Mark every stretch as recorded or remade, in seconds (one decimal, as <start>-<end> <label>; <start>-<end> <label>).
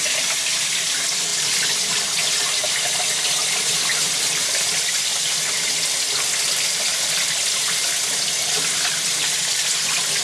0.0-10.2 recorded